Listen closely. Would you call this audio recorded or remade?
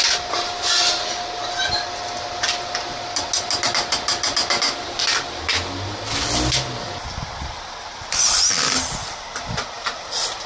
recorded